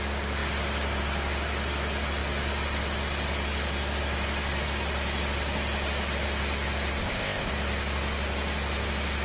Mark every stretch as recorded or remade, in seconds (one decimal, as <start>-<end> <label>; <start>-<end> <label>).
0.0-7.0 recorded; 7.0-7.5 remade; 7.5-9.2 recorded